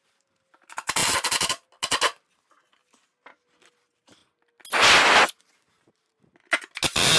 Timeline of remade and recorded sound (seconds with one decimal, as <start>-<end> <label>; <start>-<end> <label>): 0.0-1.0 remade; 1.0-3.8 recorded; 3.8-4.2 remade; 4.2-5.4 recorded; 5.4-6.1 remade; 6.1-7.2 recorded